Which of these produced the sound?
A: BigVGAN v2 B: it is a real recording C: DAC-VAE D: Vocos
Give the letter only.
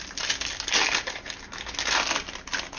B